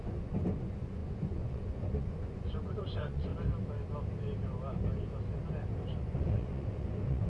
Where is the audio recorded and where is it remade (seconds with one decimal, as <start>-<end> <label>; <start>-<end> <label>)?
0.0-3.3 remade; 3.3-6.0 recorded; 6.0-7.3 remade